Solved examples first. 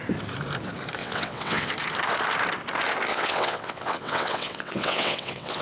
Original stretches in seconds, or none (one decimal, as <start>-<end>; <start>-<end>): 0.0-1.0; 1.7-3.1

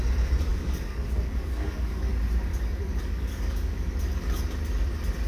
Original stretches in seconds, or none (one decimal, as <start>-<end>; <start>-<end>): 0.0-0.5; 2.1-2.5; 4.4-5.3

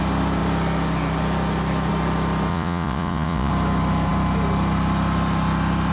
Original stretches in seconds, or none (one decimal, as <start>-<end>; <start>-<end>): 0.0-2.5; 3.5-5.9

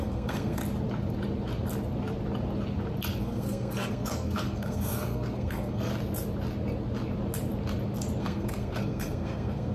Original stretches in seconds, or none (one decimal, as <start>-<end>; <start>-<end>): 0.6-3.2; 5.9-8.2

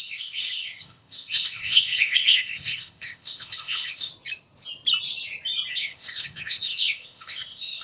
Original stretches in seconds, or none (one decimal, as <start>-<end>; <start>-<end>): 4.1-5.7

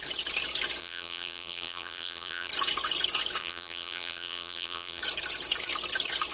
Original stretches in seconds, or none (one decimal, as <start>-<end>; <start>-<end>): 0.0-0.8; 2.5-3.4; 5.0-6.3

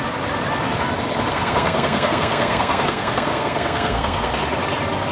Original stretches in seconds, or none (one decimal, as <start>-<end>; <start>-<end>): 0.0-1.3; 4.4-5.1

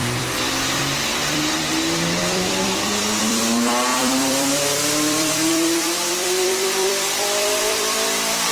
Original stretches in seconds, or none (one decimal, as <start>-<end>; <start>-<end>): none